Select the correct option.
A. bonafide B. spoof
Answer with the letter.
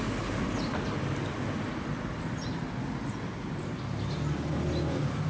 A